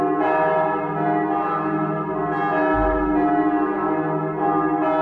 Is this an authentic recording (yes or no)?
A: yes